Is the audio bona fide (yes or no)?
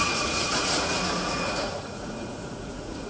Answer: no